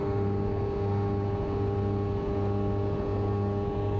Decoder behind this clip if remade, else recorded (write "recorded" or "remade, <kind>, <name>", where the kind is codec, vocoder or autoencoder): recorded